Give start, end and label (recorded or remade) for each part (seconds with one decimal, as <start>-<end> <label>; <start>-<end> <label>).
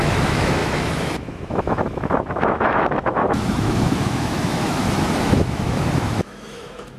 0.0-7.0 remade